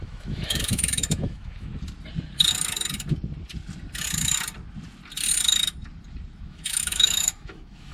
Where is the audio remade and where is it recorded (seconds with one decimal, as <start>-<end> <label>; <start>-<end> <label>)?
0.0-1.7 remade; 1.7-6.4 recorded; 6.4-7.9 remade